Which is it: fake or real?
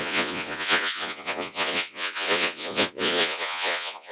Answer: fake